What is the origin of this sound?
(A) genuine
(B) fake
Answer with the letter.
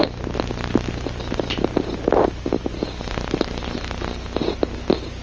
A